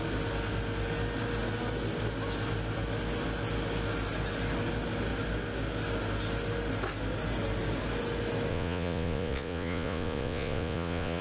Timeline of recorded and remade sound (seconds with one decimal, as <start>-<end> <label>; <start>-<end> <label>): 0.0-8.5 recorded; 8.5-11.2 remade